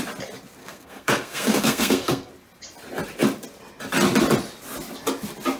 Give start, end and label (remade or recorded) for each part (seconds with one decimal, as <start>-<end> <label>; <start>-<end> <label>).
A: 0.0-0.6 recorded; 0.6-2.3 remade; 2.3-5.6 recorded